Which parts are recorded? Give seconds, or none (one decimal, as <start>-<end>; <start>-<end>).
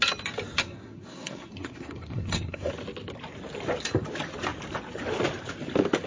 0.0-0.6; 2.7-6.1